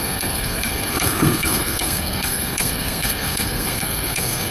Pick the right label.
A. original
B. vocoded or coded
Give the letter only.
B